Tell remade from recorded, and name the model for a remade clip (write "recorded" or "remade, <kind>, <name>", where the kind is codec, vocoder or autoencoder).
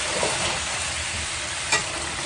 recorded